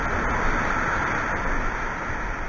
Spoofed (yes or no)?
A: no